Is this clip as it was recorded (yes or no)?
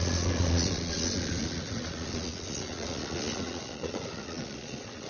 no